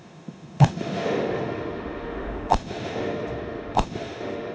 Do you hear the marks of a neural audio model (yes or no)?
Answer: yes